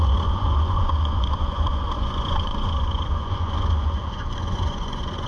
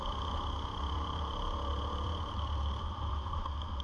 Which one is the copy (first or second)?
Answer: first